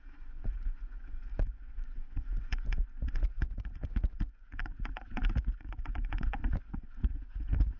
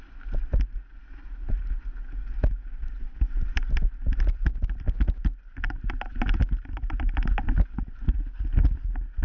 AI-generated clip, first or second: first